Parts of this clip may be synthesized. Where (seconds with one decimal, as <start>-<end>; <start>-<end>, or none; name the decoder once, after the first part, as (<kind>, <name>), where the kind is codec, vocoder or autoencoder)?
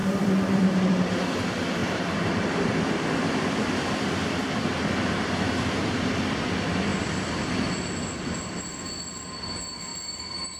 0.0-0.9 (vocoder, BigVGAN v2); 1.8-4.9; 6.9-7.5; 9.9-10.6